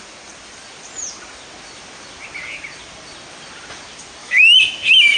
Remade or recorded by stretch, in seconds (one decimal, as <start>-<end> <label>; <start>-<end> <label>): 0.0-4.2 recorded; 4.2-5.2 remade

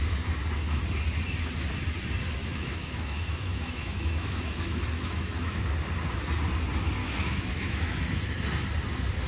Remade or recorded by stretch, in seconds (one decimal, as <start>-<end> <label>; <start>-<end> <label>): 0.0-2.4 recorded; 2.4-5.6 remade; 5.6-7.0 recorded; 7.0-7.9 remade; 7.9-9.3 recorded